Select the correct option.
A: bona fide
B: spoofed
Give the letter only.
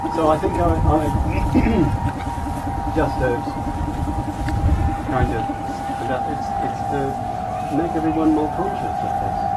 A